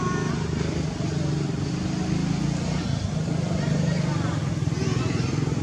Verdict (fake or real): real